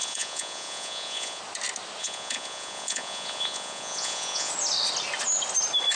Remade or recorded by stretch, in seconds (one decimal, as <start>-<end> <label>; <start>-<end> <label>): 0.0-1.4 remade; 1.4-2.0 recorded; 2.0-4.5 remade; 4.5-6.0 recorded